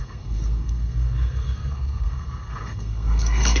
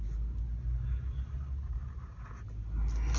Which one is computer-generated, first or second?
first